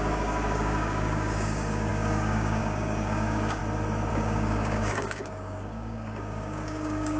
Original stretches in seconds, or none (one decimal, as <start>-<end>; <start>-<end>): 3.6-4.1